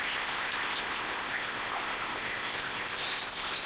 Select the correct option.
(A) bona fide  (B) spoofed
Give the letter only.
B